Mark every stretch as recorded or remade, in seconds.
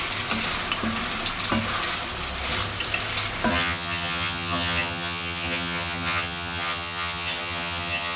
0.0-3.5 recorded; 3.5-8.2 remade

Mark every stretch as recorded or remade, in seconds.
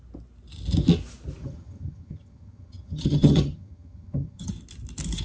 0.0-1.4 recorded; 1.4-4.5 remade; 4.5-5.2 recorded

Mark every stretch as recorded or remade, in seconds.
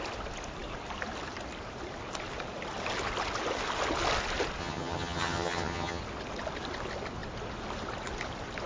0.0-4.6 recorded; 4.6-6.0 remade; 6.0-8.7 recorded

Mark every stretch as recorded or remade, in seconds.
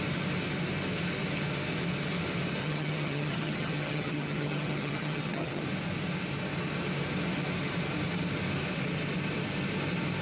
0.0-2.6 recorded; 2.6-5.6 remade; 5.6-10.2 recorded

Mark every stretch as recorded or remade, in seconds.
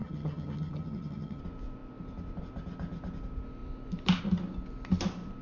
0.0-1.4 remade; 1.4-5.4 recorded